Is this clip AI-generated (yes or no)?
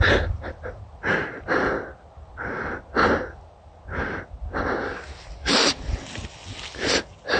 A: no